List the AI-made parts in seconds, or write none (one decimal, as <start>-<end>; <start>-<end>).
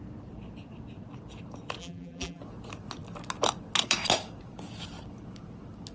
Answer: 1.8-2.4